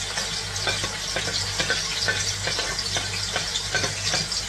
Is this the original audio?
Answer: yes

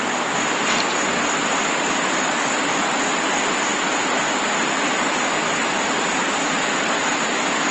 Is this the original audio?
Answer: yes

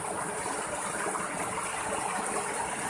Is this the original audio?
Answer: yes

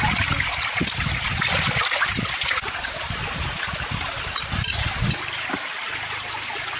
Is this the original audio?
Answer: yes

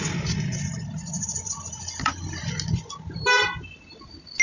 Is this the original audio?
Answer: yes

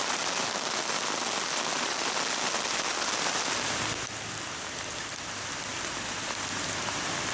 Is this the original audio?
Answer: yes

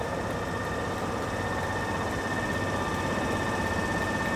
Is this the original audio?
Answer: yes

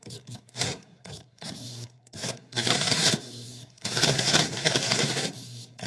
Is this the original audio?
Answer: no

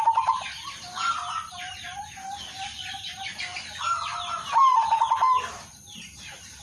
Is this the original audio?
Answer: yes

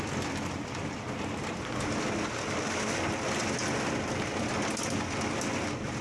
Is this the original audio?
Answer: yes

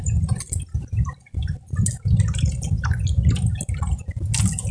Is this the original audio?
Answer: yes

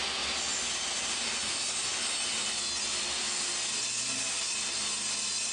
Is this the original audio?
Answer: yes